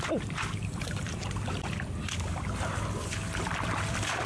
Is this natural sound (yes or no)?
no